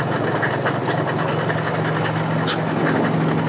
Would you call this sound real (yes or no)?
yes